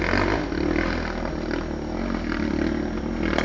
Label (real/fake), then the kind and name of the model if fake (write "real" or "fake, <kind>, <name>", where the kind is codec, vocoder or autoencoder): real